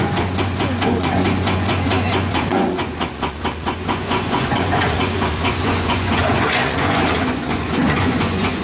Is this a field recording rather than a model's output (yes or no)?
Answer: no